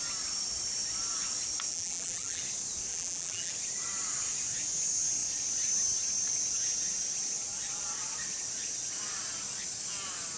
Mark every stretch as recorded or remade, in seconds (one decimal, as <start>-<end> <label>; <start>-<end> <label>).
0.0-1.7 recorded; 1.7-2.4 remade; 2.4-2.9 recorded; 2.9-3.5 remade; 3.5-10.4 recorded